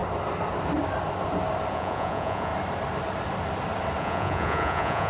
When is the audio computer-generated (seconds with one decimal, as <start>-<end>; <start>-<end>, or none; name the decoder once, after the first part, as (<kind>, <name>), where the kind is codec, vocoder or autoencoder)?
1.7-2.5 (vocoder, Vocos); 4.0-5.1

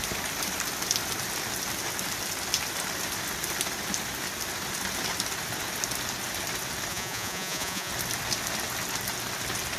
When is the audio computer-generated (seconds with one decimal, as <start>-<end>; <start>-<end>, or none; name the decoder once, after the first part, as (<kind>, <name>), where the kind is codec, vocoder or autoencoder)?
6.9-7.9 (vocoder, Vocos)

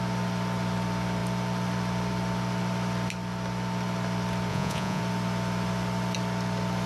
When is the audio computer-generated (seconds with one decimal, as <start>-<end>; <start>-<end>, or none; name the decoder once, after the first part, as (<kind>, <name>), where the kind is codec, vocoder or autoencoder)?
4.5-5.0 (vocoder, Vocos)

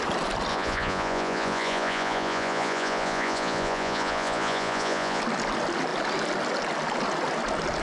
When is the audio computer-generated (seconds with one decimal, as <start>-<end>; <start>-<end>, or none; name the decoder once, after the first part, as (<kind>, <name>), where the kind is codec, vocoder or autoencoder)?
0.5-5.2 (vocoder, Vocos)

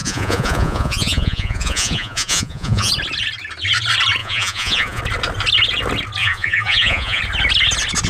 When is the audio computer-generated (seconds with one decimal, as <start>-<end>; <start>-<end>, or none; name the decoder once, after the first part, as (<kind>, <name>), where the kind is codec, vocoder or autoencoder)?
0.0-2.9 (vocoder, Vocos); 4.2-5.0; 6.2-7.2